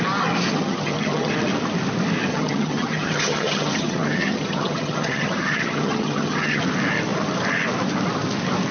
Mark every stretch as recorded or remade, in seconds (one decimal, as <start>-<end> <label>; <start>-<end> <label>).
0.0-0.5 recorded; 0.5-1.3 remade; 1.3-2.3 recorded; 2.3-6.6 remade; 6.6-8.7 recorded